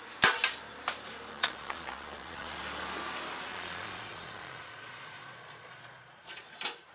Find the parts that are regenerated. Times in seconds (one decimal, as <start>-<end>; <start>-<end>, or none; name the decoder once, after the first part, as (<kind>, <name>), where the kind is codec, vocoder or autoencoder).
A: 1.3-2.6 (vocoder, Vocos); 3.5-6.5